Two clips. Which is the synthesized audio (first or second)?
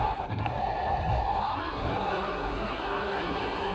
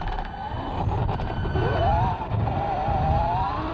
first